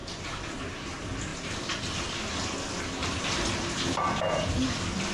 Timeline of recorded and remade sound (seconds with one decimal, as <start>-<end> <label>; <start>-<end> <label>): 0.0-0.9 remade; 0.9-1.3 recorded; 1.3-1.8 remade; 1.8-3.0 recorded; 3.0-4.0 remade; 4.0-5.1 recorded